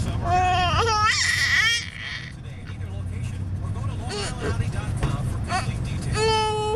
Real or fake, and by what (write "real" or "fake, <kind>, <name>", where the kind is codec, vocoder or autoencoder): real